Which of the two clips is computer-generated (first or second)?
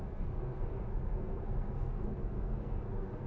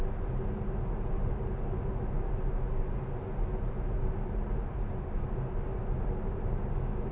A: first